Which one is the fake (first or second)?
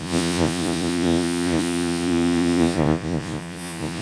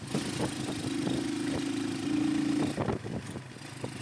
first